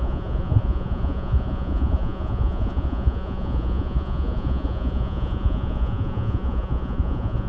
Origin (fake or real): fake